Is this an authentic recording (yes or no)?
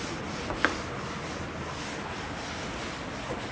yes